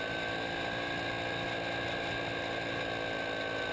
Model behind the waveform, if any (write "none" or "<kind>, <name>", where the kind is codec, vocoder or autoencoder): none